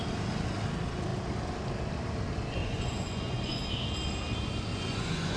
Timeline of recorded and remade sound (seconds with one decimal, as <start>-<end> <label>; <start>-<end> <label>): 0.0-2.6 recorded; 2.6-3.6 remade; 3.6-4.7 recorded; 4.7-5.4 remade